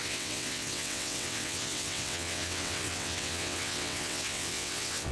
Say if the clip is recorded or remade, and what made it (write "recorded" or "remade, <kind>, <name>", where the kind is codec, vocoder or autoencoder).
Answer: remade, vocoder, WaveNeXt